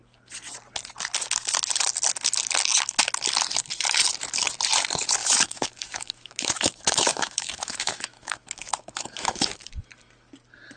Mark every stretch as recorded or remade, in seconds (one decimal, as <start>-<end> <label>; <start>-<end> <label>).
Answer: 0.0-5.2 recorded; 5.2-9.7 remade; 9.7-10.8 recorded